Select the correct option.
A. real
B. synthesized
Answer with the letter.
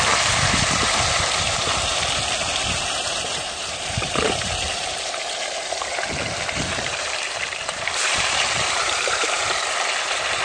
B